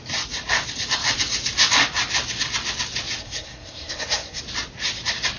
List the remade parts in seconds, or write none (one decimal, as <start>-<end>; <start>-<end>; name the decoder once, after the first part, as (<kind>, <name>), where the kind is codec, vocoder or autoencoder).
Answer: 3.2-4.4 (codec, SNAC)